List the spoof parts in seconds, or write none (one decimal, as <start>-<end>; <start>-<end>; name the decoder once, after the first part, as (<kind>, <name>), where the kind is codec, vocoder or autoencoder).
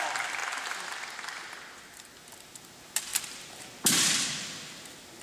none